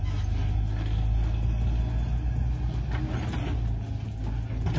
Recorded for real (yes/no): yes